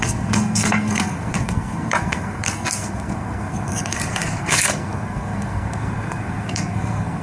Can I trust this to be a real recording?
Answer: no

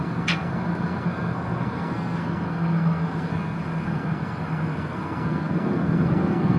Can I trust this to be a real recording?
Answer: no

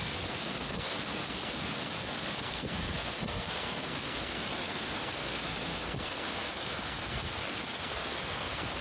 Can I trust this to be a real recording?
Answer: no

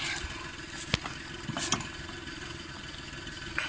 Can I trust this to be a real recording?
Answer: yes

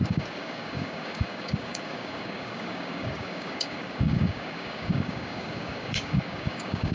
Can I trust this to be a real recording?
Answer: no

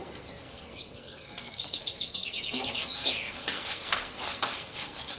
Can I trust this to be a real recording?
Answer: no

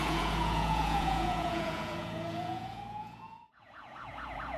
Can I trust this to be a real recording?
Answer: no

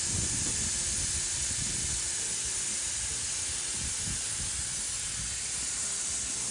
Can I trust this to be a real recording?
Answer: yes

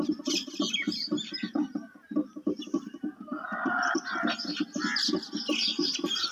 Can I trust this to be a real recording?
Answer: yes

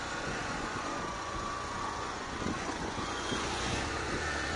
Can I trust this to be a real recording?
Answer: no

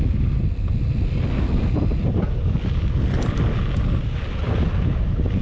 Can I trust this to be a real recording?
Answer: yes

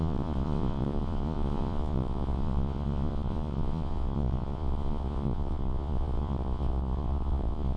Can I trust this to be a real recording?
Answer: no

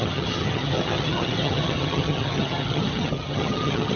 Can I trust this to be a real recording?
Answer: no